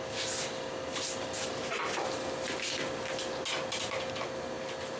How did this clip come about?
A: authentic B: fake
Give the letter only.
A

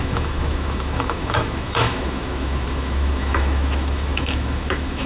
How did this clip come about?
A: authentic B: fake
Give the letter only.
B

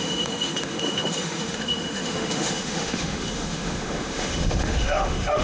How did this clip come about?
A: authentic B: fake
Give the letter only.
B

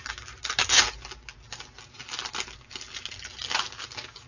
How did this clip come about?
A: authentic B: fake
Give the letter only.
A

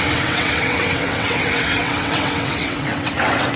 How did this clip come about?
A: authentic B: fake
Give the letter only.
B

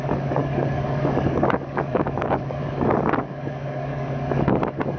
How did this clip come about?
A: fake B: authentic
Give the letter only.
A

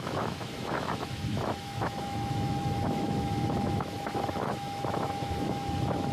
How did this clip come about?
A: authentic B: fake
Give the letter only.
B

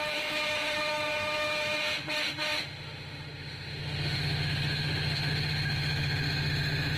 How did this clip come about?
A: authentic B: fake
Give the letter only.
B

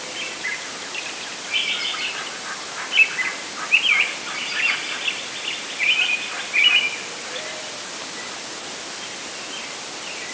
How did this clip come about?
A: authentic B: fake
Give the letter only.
A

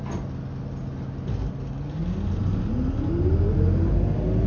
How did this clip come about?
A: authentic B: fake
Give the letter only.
A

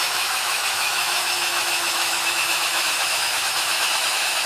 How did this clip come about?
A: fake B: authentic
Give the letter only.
A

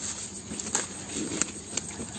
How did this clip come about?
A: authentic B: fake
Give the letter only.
A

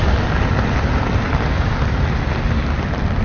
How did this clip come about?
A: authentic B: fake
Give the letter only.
A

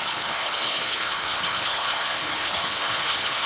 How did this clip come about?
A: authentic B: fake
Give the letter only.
B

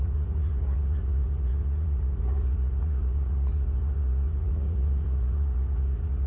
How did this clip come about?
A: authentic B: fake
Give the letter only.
B